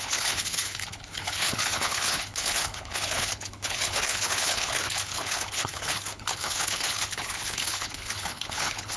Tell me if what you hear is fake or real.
fake